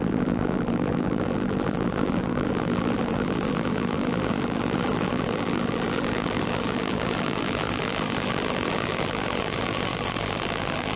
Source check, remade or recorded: remade